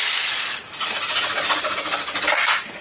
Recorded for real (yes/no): yes